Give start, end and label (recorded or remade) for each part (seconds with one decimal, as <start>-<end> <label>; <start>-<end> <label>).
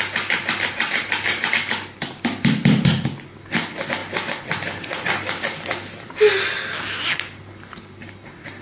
0.0-8.6 recorded